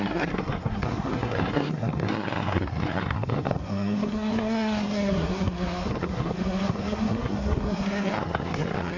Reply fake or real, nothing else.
fake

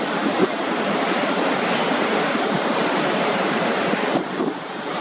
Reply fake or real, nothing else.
fake